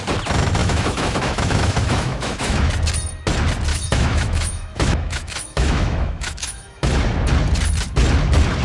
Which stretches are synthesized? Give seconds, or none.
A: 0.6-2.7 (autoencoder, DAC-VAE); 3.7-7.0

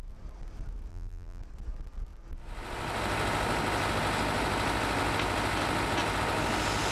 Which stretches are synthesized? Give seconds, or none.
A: 0.9-1.4 (vocoder, BigVGAN v2)

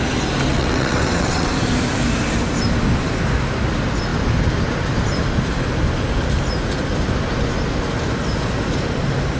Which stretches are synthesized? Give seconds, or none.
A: 0.5-1.5 (vocoder, WaveNeXt)

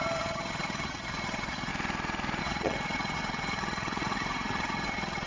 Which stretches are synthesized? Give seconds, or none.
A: 0.0-1.7 (vocoder, HiFi-GAN); 2.4-5.3